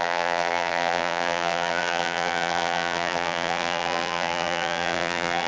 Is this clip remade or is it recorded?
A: remade